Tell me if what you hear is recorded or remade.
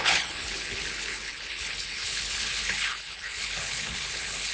remade